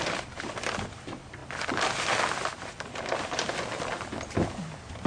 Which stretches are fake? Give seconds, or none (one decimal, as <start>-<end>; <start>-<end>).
none